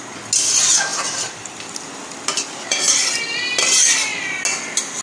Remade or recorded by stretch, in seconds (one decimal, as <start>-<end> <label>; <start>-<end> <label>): 0.0-0.9 recorded; 0.9-3.4 remade; 3.4-5.0 recorded